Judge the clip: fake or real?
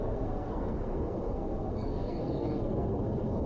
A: fake